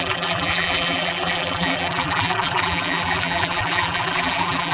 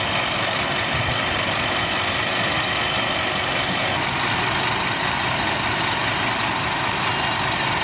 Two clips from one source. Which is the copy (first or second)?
first